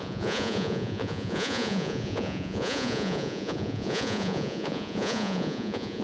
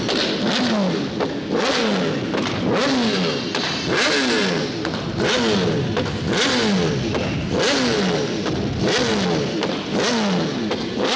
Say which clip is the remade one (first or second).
first